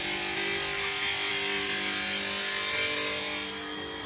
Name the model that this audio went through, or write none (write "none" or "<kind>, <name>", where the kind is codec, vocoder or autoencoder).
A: none